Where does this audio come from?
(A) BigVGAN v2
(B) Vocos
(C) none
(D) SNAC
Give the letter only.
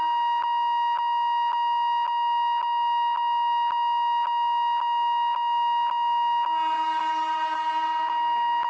C